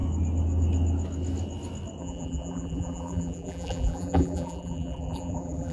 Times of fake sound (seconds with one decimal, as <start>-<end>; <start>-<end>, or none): 2.0-5.7